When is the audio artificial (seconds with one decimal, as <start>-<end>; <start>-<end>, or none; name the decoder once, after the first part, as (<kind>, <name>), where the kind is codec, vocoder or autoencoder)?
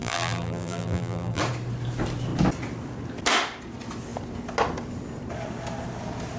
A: 0.0-1.4 (vocoder, BigVGAN v2)